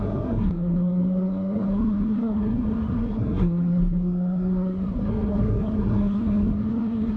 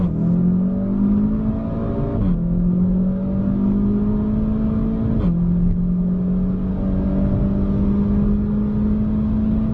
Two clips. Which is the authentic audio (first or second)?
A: second